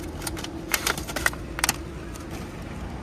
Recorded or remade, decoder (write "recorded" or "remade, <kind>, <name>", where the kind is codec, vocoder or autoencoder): recorded